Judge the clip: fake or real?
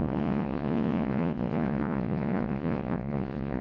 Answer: fake